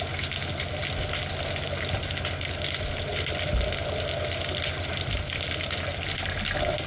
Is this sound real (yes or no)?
yes